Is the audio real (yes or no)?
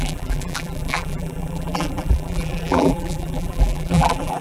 no